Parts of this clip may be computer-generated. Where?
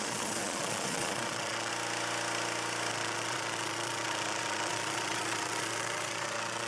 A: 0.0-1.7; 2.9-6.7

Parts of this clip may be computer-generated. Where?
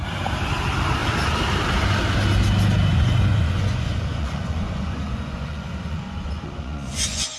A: 2.9-7.4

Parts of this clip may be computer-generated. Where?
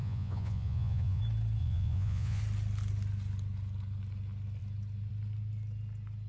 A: 0.0-1.2; 1.6-2.4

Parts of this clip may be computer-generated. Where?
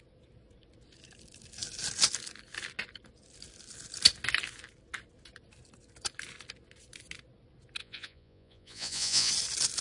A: 7.8-9.3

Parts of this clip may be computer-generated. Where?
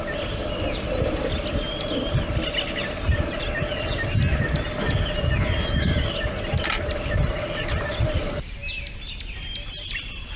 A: none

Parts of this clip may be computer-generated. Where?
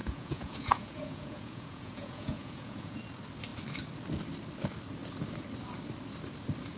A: 0.0-3.0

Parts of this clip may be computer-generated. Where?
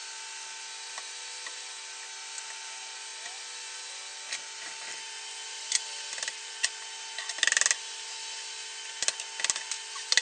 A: none